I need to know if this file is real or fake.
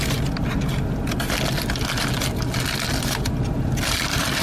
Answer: real